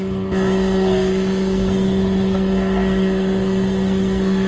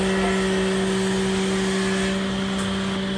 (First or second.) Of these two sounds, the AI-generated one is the first